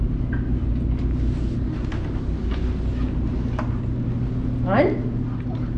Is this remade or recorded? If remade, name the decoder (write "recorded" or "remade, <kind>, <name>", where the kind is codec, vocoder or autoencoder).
recorded